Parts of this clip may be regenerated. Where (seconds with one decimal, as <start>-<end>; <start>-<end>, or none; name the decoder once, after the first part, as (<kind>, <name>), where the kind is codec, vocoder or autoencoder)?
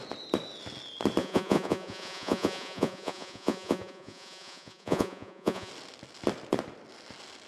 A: 1.2-5.7 (vocoder, Vocos)